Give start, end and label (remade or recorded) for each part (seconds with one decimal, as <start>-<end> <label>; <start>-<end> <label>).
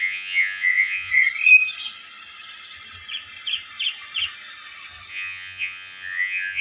0.0-1.1 remade; 1.1-5.1 recorded; 5.1-6.6 remade